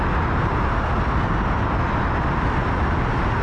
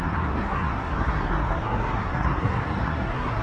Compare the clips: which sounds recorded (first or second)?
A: first